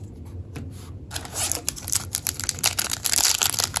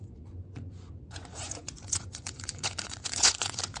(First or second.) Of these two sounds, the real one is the first